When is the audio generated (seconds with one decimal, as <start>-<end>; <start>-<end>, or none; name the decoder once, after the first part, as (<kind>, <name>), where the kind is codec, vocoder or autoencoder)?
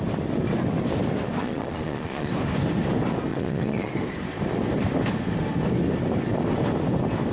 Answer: 1.4-2.3 (vocoder, Vocos); 3.3-3.9